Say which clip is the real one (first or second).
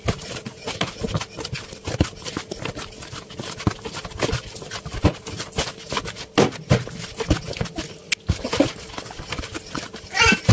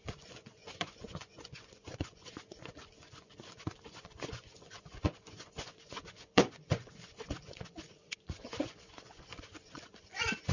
first